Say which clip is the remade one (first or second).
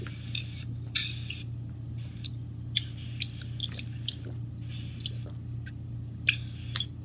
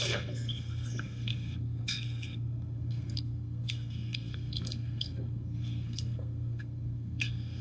second